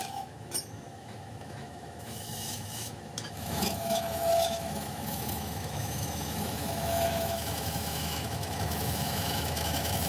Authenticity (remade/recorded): remade